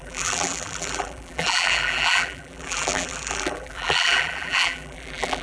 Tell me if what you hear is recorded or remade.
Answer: remade